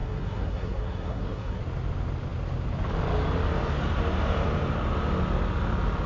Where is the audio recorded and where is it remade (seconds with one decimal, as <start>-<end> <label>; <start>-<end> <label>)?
0.0-1.6 remade; 1.6-6.1 recorded